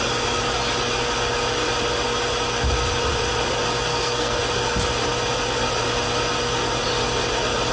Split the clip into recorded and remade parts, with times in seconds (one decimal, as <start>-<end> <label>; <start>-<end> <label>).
0.0-3.9 recorded; 3.9-4.4 remade; 4.4-7.7 recorded